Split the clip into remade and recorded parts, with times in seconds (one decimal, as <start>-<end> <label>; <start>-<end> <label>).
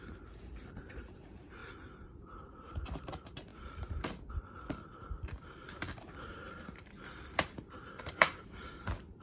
0.0-1.6 remade; 1.6-2.2 recorded; 2.2-3.5 remade; 3.5-6.0 recorded; 6.0-9.2 remade